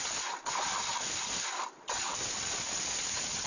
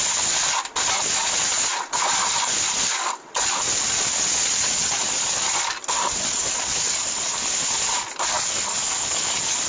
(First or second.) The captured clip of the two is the second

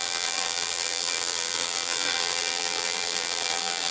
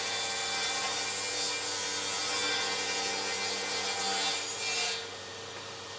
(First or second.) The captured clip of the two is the second